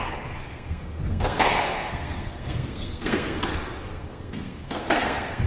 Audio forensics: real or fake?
fake